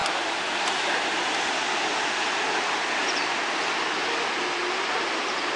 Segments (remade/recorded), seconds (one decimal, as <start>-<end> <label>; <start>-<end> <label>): 0.0-5.6 recorded